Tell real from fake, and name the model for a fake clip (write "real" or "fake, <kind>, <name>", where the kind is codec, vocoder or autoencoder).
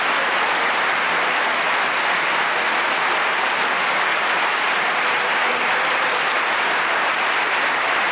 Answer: real